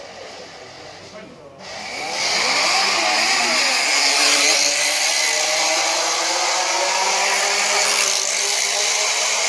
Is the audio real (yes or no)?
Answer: yes